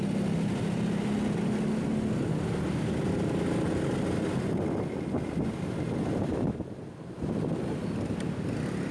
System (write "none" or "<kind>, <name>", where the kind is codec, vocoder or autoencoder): none